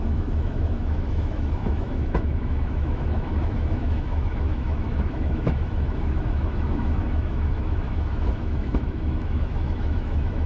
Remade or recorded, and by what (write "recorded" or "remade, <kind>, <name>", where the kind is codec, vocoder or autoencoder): remade, autoencoder, DAC-VAE